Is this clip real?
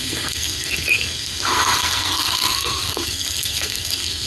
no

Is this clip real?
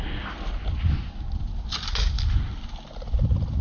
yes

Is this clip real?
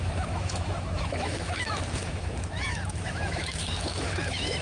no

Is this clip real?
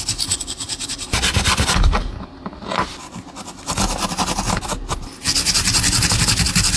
yes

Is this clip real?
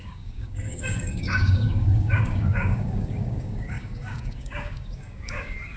no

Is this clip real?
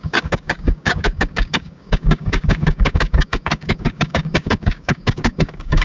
no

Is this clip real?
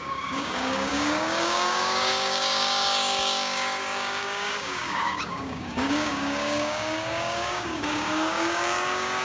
no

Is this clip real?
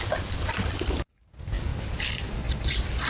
yes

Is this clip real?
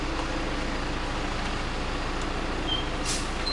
yes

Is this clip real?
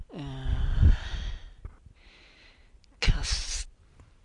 yes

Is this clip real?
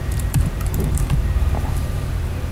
no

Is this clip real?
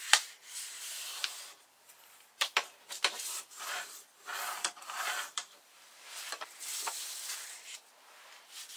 no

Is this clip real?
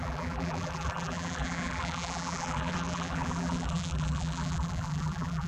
no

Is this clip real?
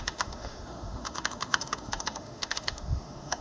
no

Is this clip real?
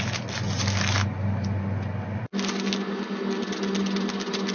yes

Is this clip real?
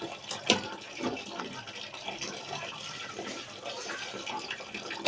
yes